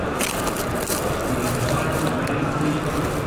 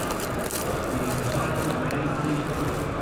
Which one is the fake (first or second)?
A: first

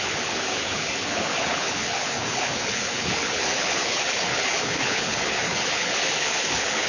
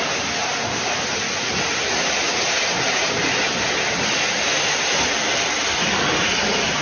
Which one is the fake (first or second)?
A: first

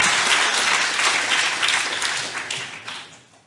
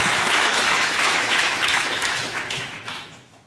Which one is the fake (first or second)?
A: second